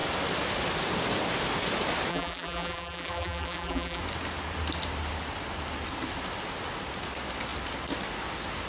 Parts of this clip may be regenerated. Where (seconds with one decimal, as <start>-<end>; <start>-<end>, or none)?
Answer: 2.1-4.0